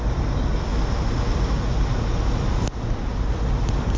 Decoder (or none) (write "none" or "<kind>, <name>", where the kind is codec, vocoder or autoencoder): none